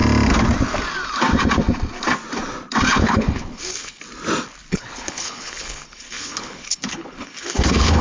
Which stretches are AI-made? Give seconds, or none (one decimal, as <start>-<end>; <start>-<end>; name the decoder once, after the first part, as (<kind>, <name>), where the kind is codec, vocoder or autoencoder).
3.0-4.0 (codec, HILCodec); 4.7-8.0